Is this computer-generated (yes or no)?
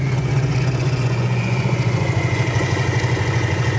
yes